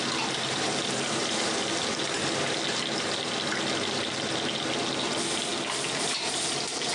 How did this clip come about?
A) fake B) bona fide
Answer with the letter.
B